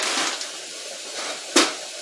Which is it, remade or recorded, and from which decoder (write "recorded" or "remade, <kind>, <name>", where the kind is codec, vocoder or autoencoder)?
recorded